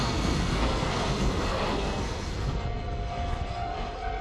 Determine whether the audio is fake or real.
fake